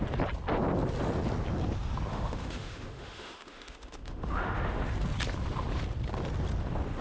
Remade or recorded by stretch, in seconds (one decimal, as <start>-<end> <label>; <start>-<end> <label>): 0.0-2.1 recorded; 2.1-4.8 remade; 4.8-7.0 recorded